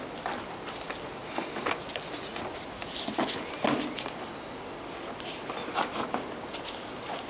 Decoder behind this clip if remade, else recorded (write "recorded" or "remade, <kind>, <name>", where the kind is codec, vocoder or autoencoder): recorded